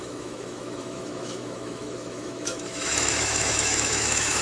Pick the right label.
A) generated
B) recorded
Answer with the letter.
A